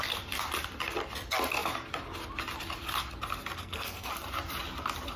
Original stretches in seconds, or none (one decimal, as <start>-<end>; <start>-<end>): 0.0-3.6; 4.1-5.2